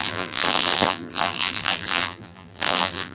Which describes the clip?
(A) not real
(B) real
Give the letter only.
A